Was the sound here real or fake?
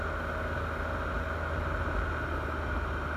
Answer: real